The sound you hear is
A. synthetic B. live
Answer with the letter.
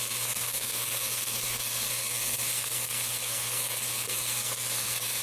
A